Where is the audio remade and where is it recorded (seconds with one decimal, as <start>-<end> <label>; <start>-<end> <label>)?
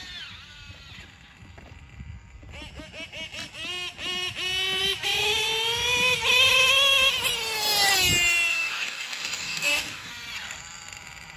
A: 0.0-8.5 recorded; 8.5-10.1 remade; 10.1-11.4 recorded